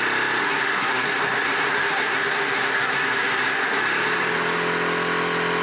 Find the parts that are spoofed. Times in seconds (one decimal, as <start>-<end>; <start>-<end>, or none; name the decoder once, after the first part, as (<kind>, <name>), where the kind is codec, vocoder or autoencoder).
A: 0.4-3.8 (codec, SNAC)